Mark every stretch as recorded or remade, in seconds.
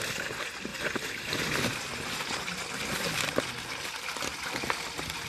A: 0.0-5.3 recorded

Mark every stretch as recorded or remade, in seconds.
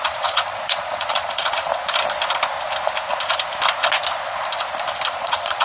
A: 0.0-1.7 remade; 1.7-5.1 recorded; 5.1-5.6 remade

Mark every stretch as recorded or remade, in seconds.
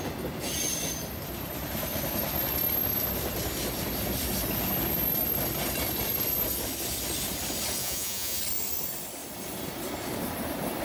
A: 0.0-7.8 recorded; 7.8-8.4 remade; 8.4-10.8 recorded